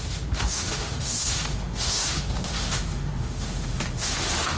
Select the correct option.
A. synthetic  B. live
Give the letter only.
A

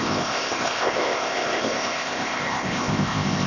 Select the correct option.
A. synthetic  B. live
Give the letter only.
A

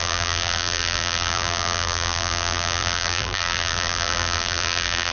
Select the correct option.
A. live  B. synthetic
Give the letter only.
B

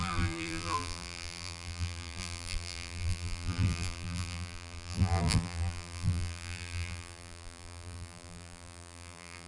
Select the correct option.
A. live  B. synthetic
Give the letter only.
B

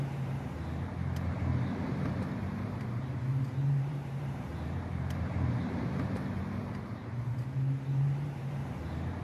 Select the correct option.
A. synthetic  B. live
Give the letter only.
A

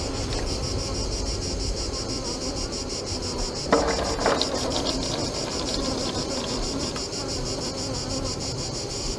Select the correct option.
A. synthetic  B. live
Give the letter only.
B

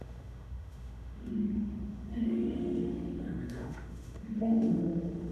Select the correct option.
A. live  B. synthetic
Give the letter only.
B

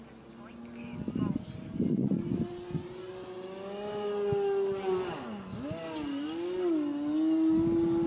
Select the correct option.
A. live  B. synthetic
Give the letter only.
A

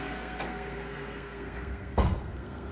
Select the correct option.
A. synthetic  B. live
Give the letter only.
A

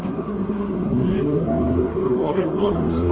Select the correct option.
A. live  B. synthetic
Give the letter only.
B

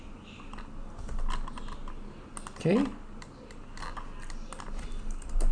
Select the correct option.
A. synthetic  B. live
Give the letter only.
B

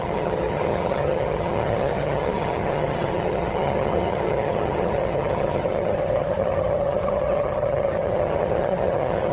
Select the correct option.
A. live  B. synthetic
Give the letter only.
B